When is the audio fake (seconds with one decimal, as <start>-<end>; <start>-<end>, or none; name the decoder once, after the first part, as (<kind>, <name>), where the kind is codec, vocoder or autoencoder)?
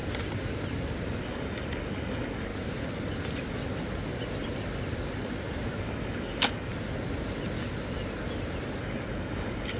1.2-2.5 (codec, DAC); 5.8-6.7; 8.8-9.8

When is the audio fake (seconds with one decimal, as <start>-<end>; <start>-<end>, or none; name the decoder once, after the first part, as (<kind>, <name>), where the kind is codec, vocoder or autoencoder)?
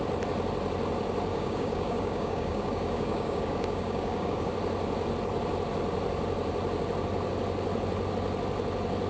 1.3-4.5 (codec, DAC)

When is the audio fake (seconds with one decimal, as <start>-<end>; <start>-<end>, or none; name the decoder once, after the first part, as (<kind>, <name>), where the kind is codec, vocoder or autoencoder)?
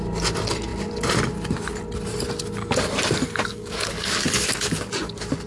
3.5-4.9 (codec, DAC)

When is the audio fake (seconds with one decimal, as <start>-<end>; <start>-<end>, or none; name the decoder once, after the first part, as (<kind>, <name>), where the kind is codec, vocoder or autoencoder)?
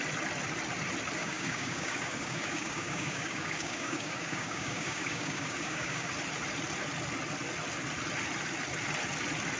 1.2-6.1 (codec, DAC)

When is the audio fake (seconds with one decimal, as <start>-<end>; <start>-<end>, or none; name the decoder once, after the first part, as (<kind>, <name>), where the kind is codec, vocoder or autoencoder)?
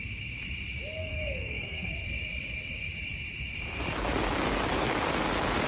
1.0-1.9 (codec, DAC)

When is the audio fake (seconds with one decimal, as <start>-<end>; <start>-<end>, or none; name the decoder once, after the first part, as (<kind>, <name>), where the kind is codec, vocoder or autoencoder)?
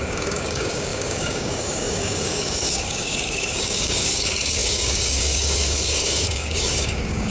0.0-7.3 (codec, DAC)